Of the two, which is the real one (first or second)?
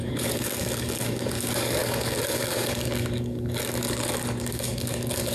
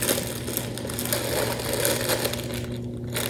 second